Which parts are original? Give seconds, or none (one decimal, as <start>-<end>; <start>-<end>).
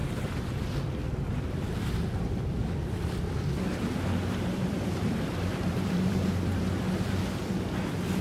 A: 0.0-2.6; 7.2-8.2